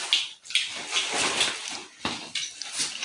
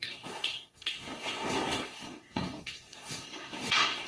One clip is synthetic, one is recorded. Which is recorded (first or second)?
first